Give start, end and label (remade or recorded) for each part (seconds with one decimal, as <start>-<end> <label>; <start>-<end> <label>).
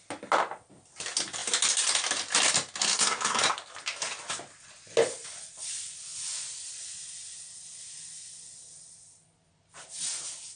0.0-2.9 recorded; 2.9-3.5 remade; 3.5-10.6 recorded